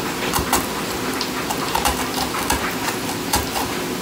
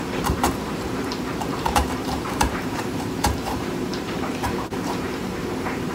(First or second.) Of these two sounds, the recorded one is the first